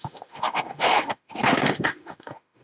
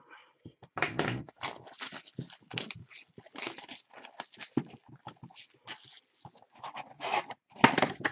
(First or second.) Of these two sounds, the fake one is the first